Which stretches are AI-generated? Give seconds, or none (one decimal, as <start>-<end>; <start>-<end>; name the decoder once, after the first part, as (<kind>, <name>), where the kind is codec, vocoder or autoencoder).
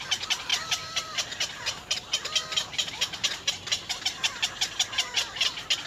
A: none